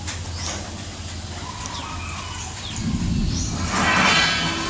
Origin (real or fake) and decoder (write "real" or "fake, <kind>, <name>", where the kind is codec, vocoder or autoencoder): real